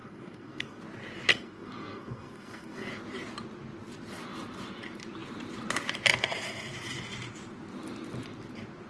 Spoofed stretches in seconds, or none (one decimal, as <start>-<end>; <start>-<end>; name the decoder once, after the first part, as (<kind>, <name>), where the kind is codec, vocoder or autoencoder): 0.0-0.8 (codec, SNAC); 1.3-2.9